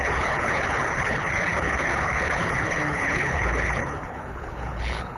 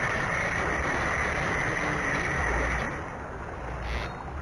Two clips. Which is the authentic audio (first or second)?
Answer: second